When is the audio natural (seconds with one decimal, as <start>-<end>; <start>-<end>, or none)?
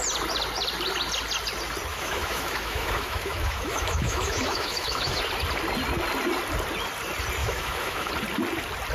0.0-1.9; 5.2-7.4; 8.1-8.9